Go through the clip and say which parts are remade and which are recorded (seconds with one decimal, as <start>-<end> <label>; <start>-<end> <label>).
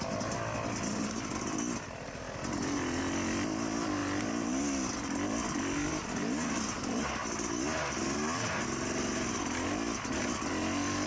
0.0-11.1 recorded